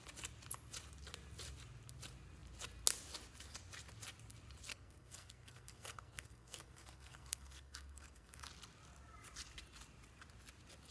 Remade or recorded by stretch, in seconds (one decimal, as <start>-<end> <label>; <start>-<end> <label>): 0.0-4.7 recorded; 4.7-8.5 remade; 8.5-10.9 recorded